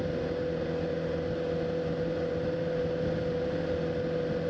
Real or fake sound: real